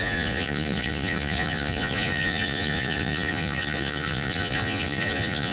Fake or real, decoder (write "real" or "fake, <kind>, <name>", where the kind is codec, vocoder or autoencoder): fake, vocoder, Vocos